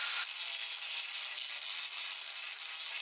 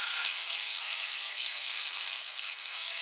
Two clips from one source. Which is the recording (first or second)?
first